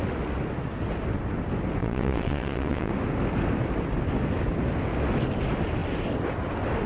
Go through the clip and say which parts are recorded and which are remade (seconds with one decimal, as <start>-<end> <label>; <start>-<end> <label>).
0.0-1.8 recorded; 1.8-2.9 remade; 2.9-6.9 recorded